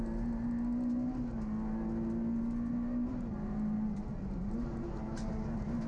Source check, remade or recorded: recorded